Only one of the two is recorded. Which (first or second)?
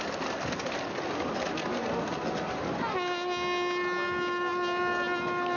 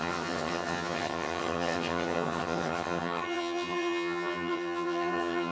first